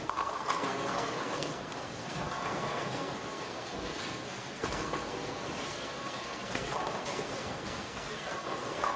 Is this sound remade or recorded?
remade